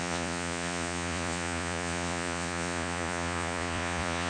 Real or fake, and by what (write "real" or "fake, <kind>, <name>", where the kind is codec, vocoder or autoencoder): fake, vocoder, Vocos